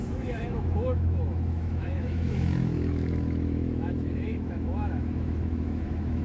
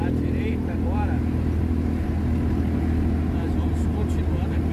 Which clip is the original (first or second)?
second